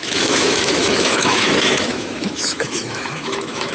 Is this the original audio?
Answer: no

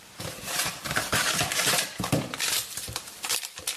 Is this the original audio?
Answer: no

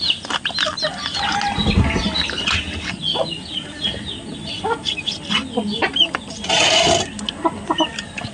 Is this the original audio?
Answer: yes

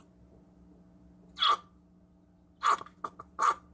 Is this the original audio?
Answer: yes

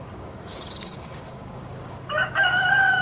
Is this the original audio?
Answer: no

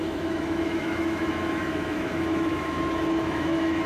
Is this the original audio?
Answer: no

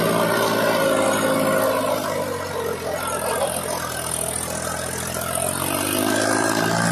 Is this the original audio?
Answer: yes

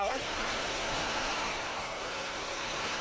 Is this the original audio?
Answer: no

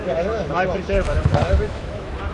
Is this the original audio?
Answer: no